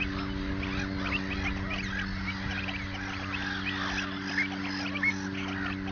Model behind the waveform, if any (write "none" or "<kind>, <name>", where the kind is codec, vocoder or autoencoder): none